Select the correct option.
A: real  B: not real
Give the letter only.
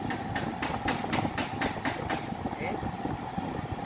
A